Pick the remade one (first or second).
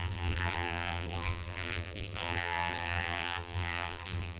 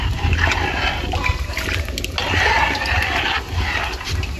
first